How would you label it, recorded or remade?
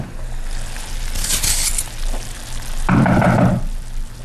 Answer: recorded